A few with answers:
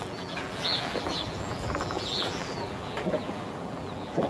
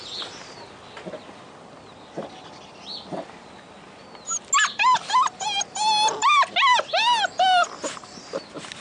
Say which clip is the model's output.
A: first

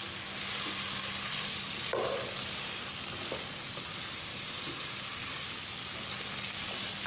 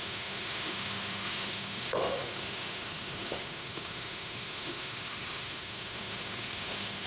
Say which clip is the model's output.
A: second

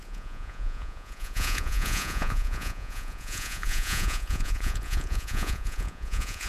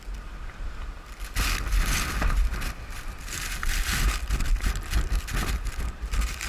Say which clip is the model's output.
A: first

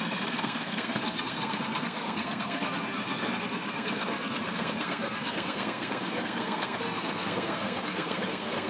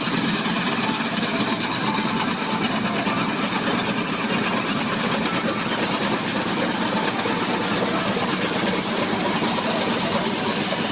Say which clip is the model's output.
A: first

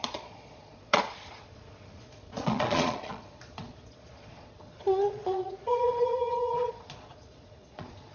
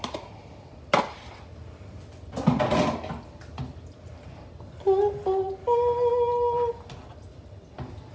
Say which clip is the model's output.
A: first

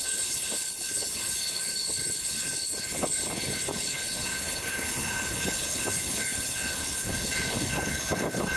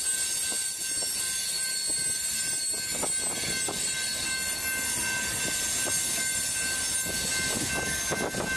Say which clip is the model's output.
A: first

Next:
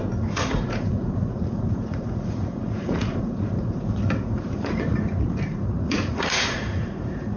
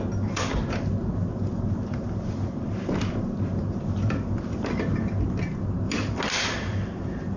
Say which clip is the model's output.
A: first